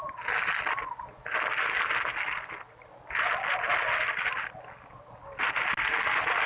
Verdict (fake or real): real